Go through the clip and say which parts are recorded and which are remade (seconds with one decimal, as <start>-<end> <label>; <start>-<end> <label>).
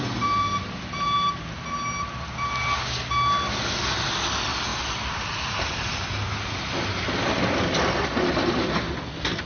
0.0-4.7 recorded; 4.7-6.9 remade; 6.9-9.5 recorded